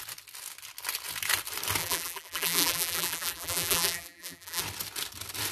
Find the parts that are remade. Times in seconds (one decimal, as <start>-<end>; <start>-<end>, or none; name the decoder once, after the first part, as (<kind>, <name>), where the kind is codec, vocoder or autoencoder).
1.8-4.6 (vocoder, BigVGAN v2)